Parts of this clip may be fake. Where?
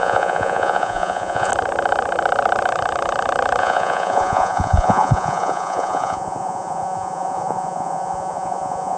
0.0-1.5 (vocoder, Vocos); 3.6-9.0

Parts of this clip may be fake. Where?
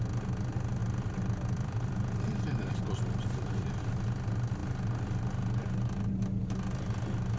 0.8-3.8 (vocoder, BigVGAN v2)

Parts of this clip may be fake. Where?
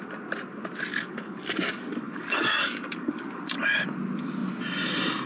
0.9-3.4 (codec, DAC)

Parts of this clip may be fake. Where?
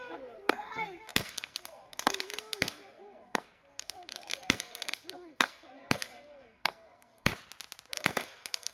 0.0-7.3 (codec, SNAC); 7.9-8.7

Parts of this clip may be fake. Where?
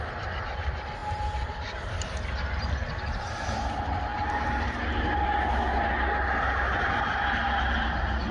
none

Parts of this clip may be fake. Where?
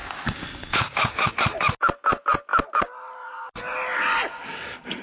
0.0-1.3 (codec, DAC)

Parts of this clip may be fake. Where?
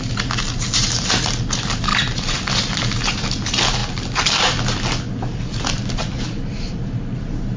1.9-2.5 (vocoder, BigVGAN v2)